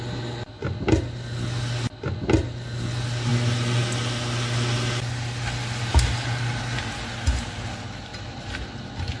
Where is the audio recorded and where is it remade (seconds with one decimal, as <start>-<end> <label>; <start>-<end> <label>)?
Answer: 0.0-8.1 recorded; 8.1-8.7 remade; 8.7-9.2 recorded